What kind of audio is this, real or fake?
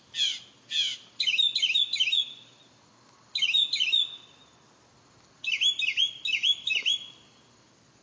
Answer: real